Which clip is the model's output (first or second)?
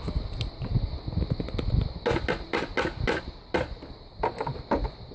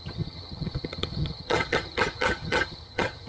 second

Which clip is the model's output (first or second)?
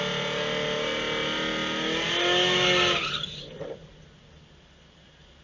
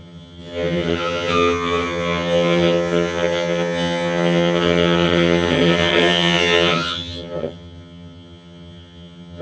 second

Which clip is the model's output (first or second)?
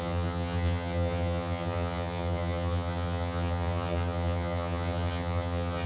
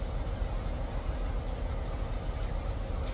first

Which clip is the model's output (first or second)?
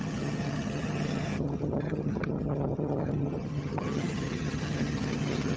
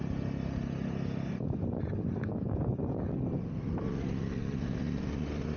first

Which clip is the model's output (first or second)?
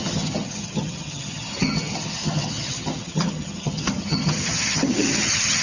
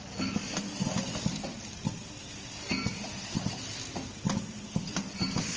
first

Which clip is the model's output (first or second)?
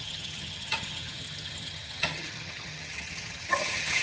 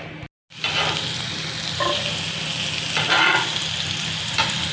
first